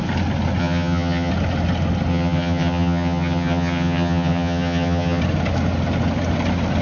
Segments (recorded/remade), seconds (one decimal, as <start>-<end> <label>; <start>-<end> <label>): 0.0-0.6 recorded; 0.6-1.3 remade; 1.3-2.1 recorded; 2.1-5.2 remade; 5.2-6.8 recorded